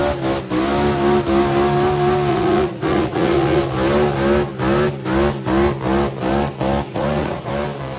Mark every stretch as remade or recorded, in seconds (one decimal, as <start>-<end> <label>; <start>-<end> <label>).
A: 0.0-2.3 recorded; 2.3-3.6 remade; 3.6-6.9 recorded; 6.9-7.5 remade; 7.5-8.0 recorded